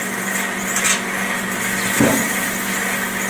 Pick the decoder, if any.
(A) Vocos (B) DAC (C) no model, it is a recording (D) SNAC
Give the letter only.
C